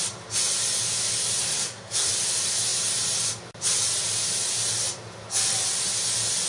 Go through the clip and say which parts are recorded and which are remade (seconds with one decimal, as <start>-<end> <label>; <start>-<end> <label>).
0.0-1.4 recorded; 1.4-2.1 remade; 2.1-6.5 recorded